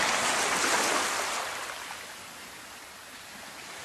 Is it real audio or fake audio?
real